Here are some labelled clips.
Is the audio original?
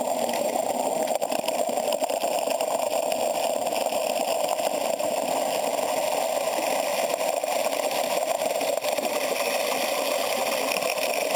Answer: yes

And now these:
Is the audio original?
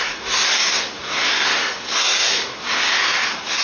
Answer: no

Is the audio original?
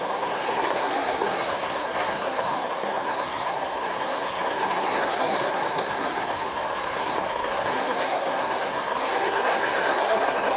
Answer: no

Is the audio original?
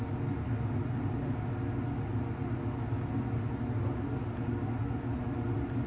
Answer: yes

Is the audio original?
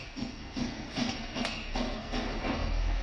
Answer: no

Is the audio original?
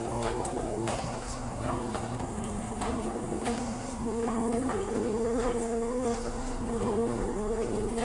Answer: no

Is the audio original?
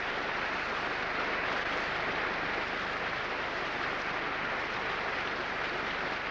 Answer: yes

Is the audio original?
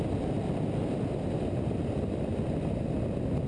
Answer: yes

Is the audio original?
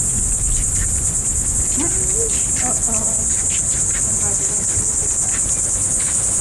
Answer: yes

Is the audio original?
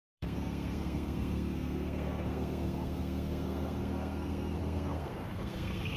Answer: no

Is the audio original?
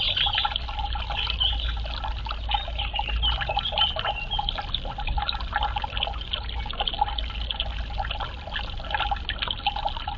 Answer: yes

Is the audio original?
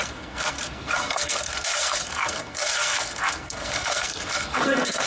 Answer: no